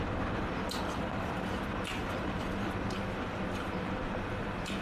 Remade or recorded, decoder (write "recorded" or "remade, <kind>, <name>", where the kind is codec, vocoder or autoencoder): remade, vocoder, BigVGAN v2